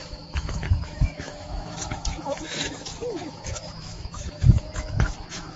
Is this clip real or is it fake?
fake